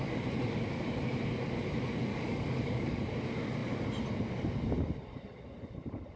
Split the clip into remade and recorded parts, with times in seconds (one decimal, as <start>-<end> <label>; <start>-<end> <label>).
0.0-2.1 recorded; 2.1-3.0 remade; 3.0-6.2 recorded